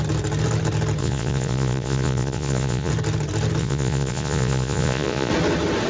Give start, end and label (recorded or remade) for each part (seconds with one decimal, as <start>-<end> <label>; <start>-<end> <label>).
0.0-1.0 recorded; 1.0-2.9 remade; 2.9-3.6 recorded; 3.6-5.3 remade; 5.3-5.9 recorded